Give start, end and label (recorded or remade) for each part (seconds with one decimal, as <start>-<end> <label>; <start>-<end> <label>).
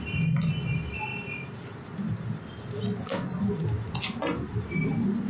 0.0-5.3 recorded